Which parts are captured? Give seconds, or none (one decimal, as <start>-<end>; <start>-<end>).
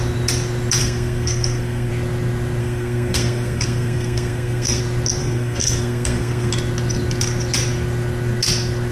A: 0.0-0.8; 1.9-2.6; 4.8-5.2; 6.5-8.9